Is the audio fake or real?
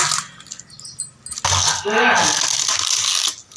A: real